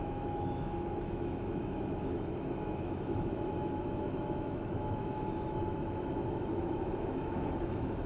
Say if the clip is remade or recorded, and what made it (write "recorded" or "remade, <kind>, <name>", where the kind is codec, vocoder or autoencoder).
remade, autoencoder, DAC-VAE